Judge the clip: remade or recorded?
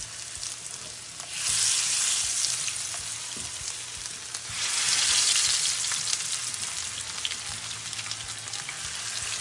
recorded